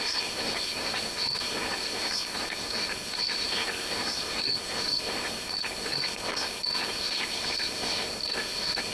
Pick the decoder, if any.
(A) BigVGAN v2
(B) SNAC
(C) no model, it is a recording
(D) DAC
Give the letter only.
B